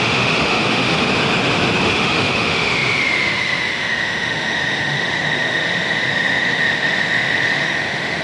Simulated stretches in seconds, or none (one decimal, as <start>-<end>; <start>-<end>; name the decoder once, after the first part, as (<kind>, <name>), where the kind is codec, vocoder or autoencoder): 0.0-1.1 (autoencoder, DAC-VAE); 1.8-8.2